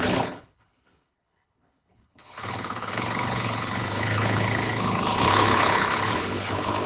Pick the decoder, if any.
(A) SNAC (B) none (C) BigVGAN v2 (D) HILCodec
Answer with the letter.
D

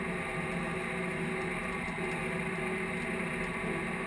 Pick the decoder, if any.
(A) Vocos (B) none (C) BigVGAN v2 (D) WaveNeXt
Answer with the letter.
B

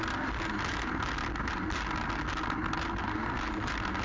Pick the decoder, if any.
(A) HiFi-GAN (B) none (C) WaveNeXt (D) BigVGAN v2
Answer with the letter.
B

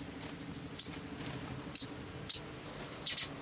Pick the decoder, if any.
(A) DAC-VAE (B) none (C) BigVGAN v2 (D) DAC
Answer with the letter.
B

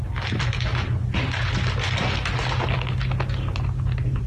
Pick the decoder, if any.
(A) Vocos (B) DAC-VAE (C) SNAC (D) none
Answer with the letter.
D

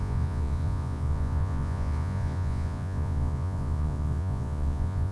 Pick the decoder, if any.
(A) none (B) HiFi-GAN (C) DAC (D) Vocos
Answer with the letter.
D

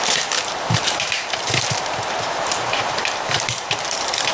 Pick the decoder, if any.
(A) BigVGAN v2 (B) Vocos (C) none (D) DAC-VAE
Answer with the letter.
A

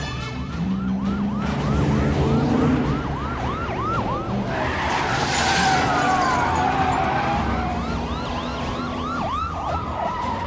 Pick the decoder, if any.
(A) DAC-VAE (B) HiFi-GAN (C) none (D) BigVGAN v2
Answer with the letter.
C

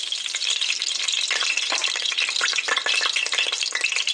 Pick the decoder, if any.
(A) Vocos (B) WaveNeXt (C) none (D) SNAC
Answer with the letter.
C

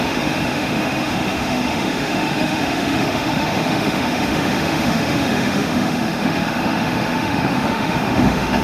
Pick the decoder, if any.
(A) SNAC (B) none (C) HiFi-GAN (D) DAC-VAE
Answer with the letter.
D